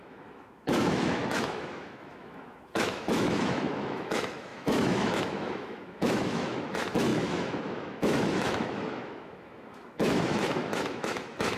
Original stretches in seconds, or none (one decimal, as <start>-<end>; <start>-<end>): none